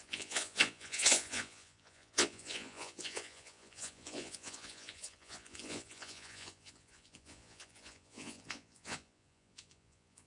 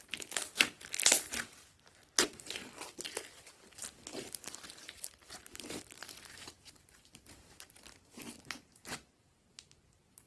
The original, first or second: second